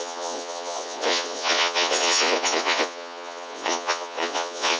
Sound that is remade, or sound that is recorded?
remade